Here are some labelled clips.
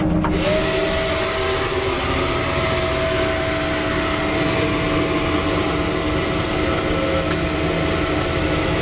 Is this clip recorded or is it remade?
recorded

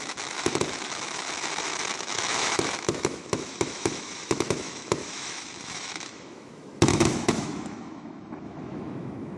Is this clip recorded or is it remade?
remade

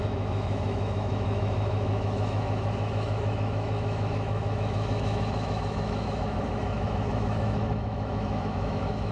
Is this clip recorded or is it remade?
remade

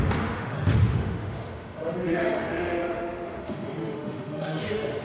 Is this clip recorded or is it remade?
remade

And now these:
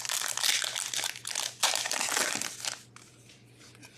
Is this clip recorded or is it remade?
recorded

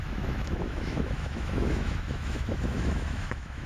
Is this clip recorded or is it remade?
remade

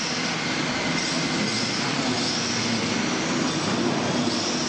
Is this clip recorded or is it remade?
recorded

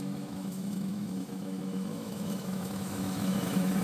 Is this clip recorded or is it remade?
remade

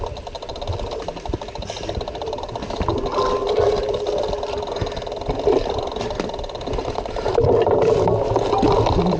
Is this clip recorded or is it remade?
recorded